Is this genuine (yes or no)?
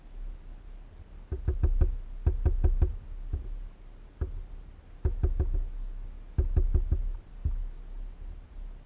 yes